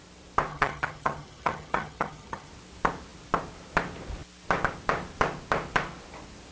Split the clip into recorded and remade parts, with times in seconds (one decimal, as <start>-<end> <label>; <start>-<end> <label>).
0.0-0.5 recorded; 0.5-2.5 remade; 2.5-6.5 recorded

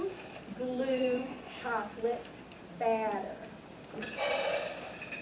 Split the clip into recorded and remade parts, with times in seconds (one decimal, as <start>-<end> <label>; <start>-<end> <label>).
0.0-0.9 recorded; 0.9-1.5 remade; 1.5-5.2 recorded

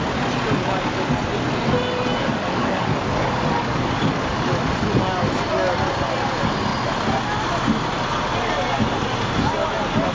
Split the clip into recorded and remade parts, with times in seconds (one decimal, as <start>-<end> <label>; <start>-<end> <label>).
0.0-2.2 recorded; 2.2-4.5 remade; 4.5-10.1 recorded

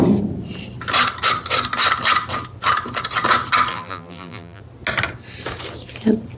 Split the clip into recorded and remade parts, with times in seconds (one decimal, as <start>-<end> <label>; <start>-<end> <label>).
0.0-3.7 recorded; 3.7-4.6 remade; 4.6-6.4 recorded

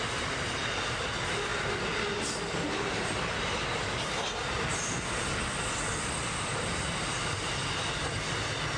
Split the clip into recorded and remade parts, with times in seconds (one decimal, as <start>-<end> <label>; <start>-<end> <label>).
0.0-8.8 recorded

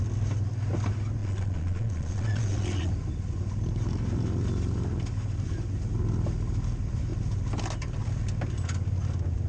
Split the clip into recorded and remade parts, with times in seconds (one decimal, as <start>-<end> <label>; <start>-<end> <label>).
0.0-1.2 recorded; 1.2-2.9 remade; 2.9-9.5 recorded